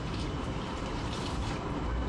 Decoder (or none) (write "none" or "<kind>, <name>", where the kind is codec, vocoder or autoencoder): vocoder, BigVGAN v2